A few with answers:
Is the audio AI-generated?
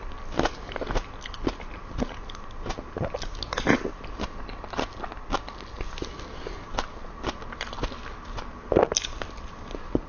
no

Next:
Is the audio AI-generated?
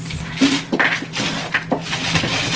no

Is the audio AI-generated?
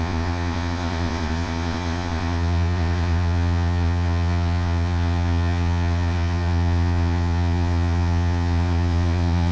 yes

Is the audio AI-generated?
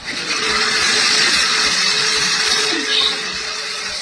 yes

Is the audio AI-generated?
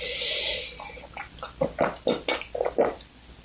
no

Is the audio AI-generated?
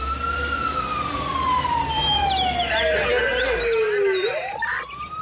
no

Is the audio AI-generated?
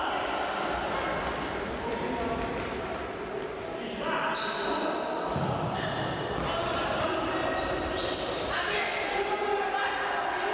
no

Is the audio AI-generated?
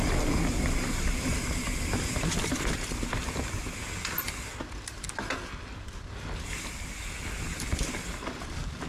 no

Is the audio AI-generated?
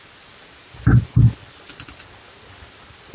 no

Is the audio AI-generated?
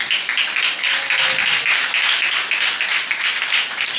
no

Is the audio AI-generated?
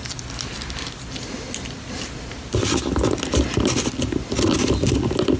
no